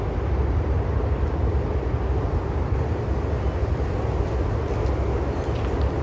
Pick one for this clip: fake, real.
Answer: real